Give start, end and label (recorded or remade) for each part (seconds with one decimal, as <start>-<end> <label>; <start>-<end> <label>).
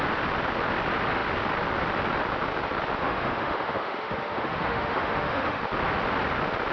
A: 0.0-3.0 recorded; 3.0-5.6 remade; 5.6-6.7 recorded